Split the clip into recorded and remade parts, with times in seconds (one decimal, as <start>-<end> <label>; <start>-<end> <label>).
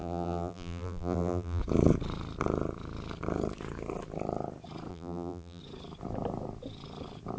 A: 0.0-1.6 remade; 1.6-4.9 recorded; 4.9-5.6 remade; 5.6-7.4 recorded